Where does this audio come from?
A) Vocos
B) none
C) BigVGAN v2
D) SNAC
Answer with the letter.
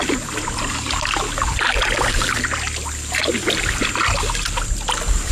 B